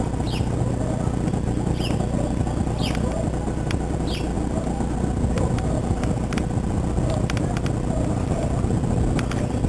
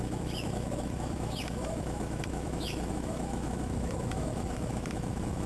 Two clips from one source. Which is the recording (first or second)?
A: first